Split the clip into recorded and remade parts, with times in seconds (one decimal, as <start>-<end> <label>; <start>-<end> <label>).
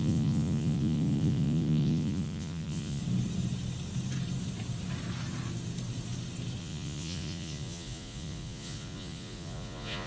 0.0-3.0 remade; 3.0-6.6 recorded; 6.6-10.1 remade